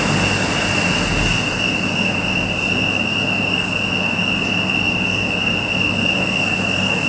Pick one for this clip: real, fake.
real